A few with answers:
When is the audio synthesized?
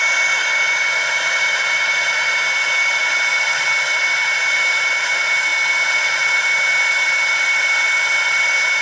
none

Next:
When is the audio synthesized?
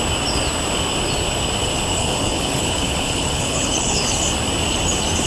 1.9-4.1 (codec, HILCodec)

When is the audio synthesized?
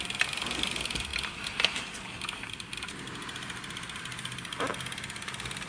none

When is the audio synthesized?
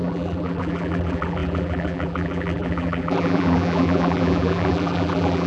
0.0-5.5 (vocoder, BigVGAN v2)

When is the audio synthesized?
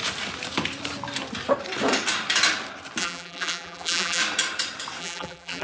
3.0-4.2 (vocoder, BigVGAN v2); 5.0-5.6